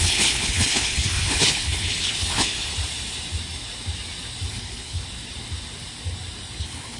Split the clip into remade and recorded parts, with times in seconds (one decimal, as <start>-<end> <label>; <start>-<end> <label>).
0.0-2.7 remade; 2.7-4.5 recorded; 4.5-5.0 remade; 5.0-6.6 recorded; 6.6-7.0 remade